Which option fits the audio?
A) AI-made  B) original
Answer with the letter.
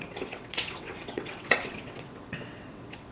A